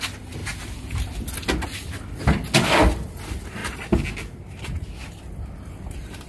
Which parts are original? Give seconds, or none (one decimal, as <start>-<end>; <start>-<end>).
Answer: 0.0-6.3